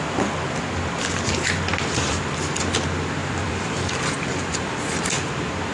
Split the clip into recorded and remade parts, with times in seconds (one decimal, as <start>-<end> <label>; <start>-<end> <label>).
0.0-1.7 recorded; 1.7-2.2 remade; 2.2-3.2 recorded; 3.2-5.0 remade; 5.0-5.7 recorded